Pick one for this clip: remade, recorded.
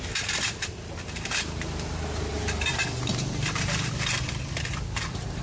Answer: remade